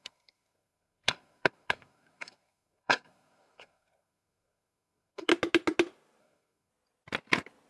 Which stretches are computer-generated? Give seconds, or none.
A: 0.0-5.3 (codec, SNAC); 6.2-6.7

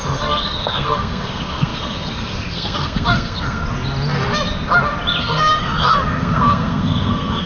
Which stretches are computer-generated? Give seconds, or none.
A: 0.0-3.6 (codec, SNAC); 5.2-7.5

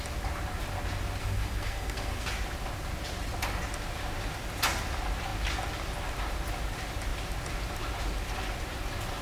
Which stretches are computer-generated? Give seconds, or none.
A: 1.2-2.3 (codec, SNAC)

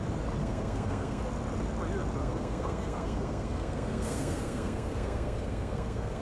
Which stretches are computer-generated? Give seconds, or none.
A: 0.4-1.2 (codec, SNAC); 2.2-6.2

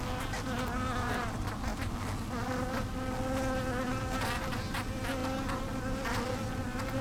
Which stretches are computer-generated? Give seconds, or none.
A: none

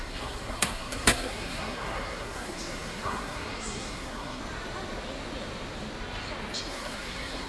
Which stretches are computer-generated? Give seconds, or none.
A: 0.0-4.4 (codec, SNAC); 6.7-7.5

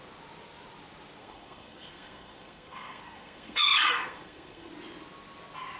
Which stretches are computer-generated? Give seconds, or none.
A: 1.2-4.7 (codec, SNAC)

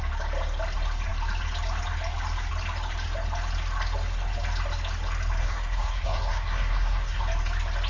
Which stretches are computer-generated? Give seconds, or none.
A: 5.4-7.2 (codec, SNAC)